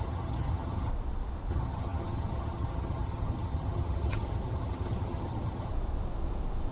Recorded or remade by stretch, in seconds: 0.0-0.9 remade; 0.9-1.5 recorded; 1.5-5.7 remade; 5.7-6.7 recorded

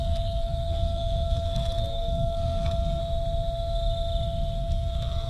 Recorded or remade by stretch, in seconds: 0.0-3.0 remade; 3.0-4.6 recorded; 4.6-5.3 remade

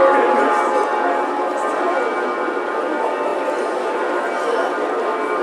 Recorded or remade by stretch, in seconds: 0.0-5.4 recorded

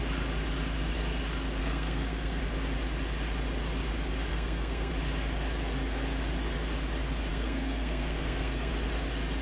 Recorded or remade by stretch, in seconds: 0.0-1.6 recorded; 1.6-2.4 remade; 2.4-4.3 recorded; 4.3-4.9 remade; 4.9-7.3 recorded; 7.3-8.7 remade; 8.7-9.4 recorded

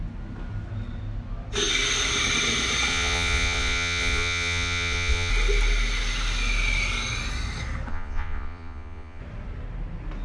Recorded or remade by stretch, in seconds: 0.0-2.9 recorded; 2.9-5.3 remade; 5.3-7.9 recorded; 7.9-9.2 remade; 9.2-10.2 recorded

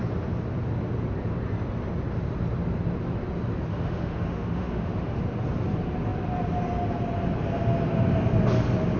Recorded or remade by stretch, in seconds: 0.0-3.7 recorded; 3.7-5.2 remade; 5.2-9.0 recorded

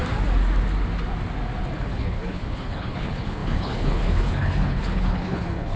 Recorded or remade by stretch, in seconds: 0.0-1.8 recorded; 1.8-5.8 remade